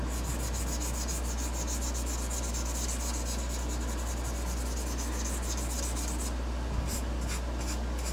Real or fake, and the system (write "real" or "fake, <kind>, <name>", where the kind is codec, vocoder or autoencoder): real